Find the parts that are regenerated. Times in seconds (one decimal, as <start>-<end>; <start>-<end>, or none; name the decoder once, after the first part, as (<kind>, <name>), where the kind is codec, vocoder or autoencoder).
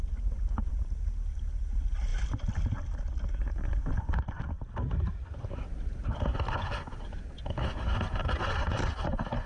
none